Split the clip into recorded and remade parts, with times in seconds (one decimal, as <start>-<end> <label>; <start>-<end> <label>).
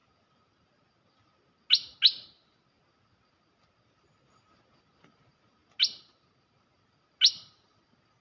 0.0-8.2 recorded